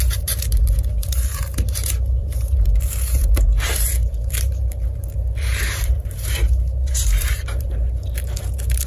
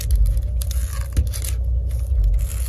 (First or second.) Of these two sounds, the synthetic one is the first